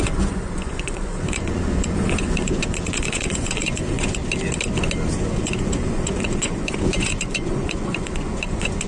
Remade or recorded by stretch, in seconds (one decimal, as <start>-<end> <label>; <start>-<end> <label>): 0.0-4.2 remade; 4.2-5.1 recorded; 5.1-8.9 remade